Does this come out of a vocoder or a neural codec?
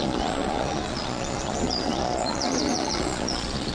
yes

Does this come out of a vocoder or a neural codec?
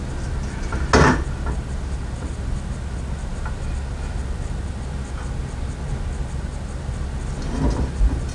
no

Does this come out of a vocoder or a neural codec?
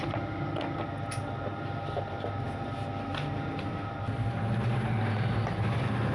no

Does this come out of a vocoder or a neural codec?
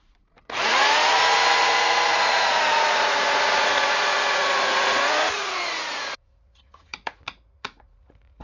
yes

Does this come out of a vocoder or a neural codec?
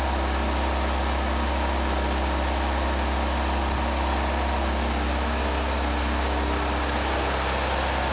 no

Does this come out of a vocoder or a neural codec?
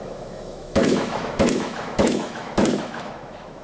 yes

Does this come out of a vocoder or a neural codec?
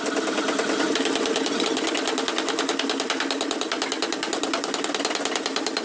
no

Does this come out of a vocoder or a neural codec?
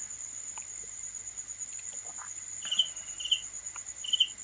no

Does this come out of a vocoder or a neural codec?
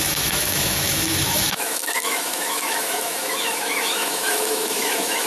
yes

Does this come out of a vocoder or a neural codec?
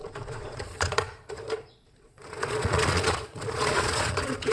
yes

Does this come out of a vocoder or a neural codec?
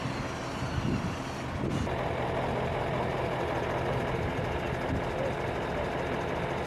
no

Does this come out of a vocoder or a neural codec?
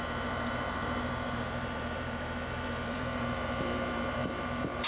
yes